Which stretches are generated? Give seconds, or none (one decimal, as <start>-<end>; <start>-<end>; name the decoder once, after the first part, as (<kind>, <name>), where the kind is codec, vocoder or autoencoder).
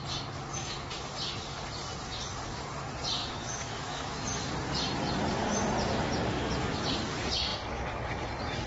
3.2-4.2 (autoencoder, DAC-VAE)